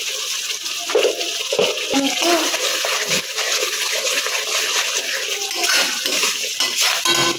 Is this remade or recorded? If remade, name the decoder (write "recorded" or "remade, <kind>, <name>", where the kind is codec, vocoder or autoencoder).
recorded